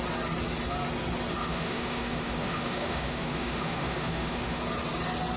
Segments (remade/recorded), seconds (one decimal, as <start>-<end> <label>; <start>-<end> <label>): 0.0-1.4 recorded; 1.4-4.6 remade; 4.6-5.4 recorded